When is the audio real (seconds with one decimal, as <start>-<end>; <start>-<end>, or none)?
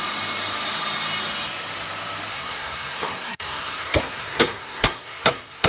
0.0-2.3